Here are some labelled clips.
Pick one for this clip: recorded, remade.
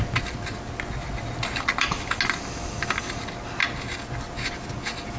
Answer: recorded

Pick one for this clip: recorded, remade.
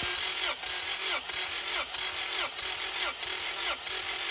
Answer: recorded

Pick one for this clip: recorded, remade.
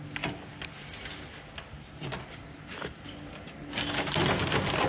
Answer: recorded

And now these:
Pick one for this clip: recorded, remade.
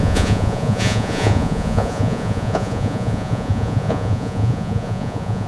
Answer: remade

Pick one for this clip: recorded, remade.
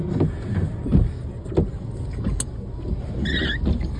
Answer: recorded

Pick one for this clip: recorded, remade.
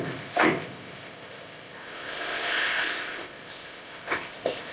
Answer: remade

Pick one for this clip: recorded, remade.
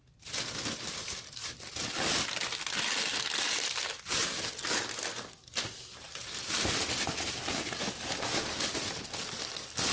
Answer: recorded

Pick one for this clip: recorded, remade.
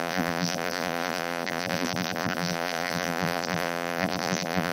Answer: remade